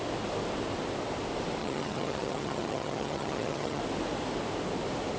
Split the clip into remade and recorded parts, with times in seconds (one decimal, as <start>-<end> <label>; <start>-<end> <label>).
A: 0.0-1.6 recorded; 1.6-3.8 remade; 3.8-5.2 recorded